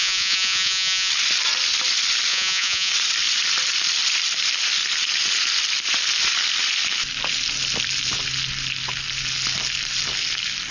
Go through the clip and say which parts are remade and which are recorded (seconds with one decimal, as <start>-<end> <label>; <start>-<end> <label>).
0.0-1.1 remade; 1.1-2.3 recorded; 2.3-2.9 remade; 2.9-10.7 recorded

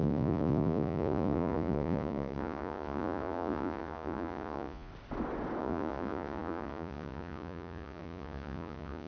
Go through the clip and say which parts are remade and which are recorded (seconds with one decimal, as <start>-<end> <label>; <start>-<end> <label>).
0.0-4.9 remade; 4.9-5.6 recorded; 5.6-9.1 remade

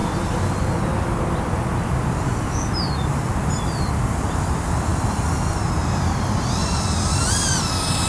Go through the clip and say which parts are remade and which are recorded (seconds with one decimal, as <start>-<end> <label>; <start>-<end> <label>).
0.0-8.1 recorded

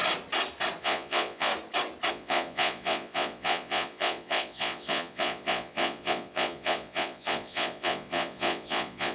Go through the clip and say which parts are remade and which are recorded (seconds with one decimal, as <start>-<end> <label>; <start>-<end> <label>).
0.0-0.8 recorded; 0.8-1.5 remade; 1.5-2.1 recorded; 2.1-9.1 remade

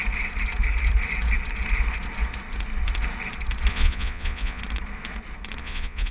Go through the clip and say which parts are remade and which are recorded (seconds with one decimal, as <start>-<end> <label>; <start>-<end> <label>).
0.0-3.7 recorded; 3.7-4.6 remade; 4.6-5.6 recorded; 5.6-6.1 remade

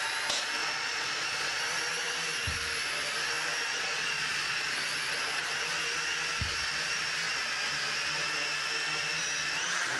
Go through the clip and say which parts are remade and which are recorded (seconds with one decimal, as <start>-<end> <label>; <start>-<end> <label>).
0.0-0.6 recorded; 0.6-1.6 remade; 1.6-3.7 recorded; 3.7-4.7 remade; 4.7-10.0 recorded